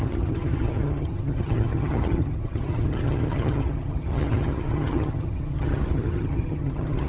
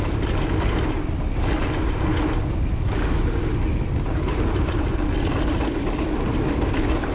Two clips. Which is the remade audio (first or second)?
first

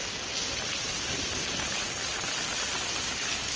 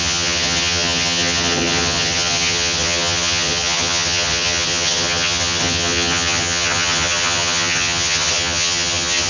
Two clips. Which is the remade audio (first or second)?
second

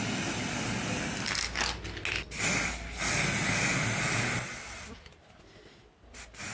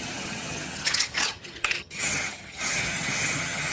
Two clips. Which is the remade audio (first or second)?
second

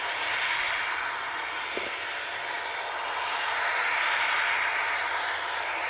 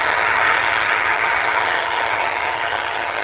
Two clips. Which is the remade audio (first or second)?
second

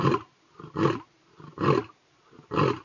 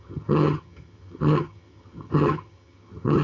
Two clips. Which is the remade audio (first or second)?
second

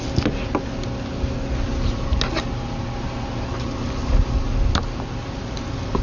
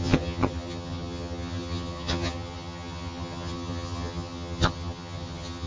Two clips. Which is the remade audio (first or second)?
second